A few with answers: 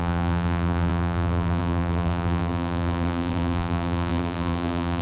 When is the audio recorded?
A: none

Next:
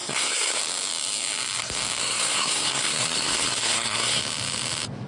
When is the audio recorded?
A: 0.6-2.0; 4.2-5.1

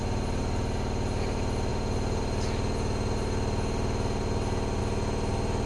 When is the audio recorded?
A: 0.0-5.7

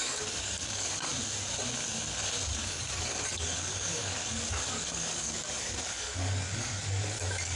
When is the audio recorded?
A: 1.1-2.5